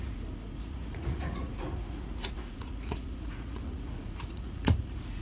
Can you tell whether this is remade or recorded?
remade